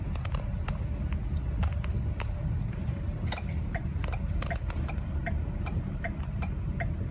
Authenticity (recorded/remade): recorded